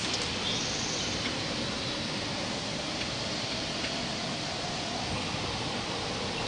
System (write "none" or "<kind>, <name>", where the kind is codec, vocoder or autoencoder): none